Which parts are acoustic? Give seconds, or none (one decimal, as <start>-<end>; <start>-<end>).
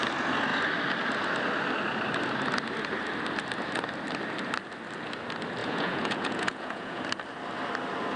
0.0-5.6; 7.0-8.2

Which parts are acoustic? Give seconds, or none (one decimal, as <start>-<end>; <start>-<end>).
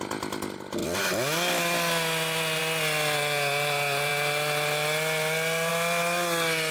0.0-6.7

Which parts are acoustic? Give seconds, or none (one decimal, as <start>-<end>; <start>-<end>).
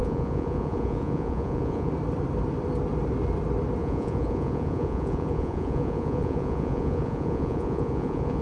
1.9-3.8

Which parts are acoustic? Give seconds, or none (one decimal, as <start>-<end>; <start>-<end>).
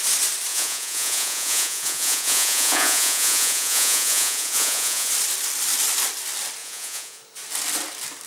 0.0-0.5; 5.1-6.6; 7.2-8.3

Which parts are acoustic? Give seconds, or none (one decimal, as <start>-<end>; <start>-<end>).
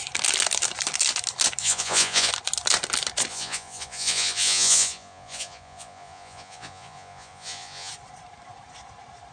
0.0-1.6; 2.3-3.3; 7.9-9.3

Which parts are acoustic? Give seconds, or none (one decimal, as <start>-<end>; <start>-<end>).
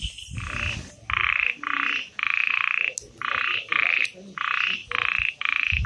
0.0-5.9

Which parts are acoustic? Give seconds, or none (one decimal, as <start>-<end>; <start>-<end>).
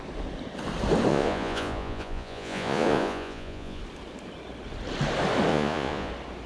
0.0-1.1; 3.8-5.5; 6.1-6.5